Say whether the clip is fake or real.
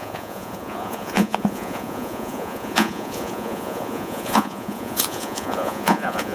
fake